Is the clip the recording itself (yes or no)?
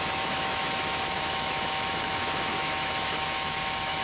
no